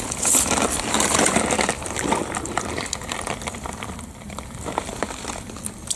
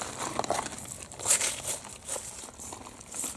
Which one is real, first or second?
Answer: second